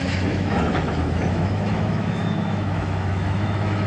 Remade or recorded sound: remade